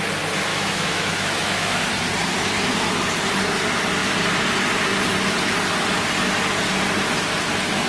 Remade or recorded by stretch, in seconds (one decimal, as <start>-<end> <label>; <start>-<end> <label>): 0.0-0.5 recorded; 0.5-1.9 remade; 1.9-7.9 recorded